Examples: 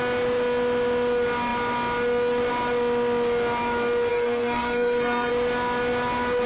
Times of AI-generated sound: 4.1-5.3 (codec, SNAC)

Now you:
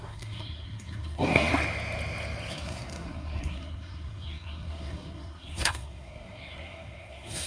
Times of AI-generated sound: 0.0-1.5 (codec, SNAC); 2.5-7.5

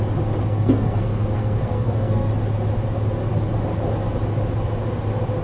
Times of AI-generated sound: 0.4-2.3 (codec, SNAC)

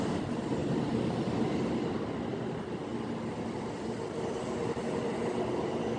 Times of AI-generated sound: none

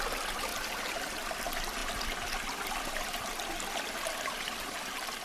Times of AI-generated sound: none

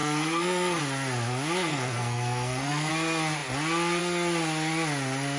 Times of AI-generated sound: 0.0-0.8 (codec, SNAC); 1.7-2.9

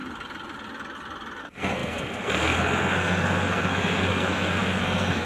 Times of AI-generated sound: 1.4-5.2 (codec, SNAC)